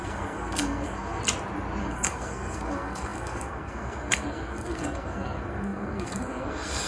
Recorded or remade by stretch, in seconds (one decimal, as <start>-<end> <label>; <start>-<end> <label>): 0.0-1.2 remade; 1.2-1.8 recorded; 1.8-6.9 remade